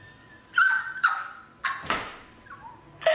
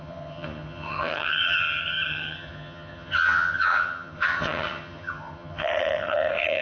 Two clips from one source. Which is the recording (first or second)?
first